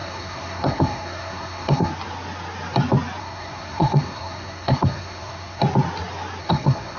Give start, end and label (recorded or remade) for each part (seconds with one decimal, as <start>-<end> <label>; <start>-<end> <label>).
0.0-1.9 remade; 1.9-3.2 recorded; 3.2-5.6 remade; 5.6-6.4 recorded; 6.4-7.0 remade